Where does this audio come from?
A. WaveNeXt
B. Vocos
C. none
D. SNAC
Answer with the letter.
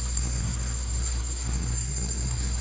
D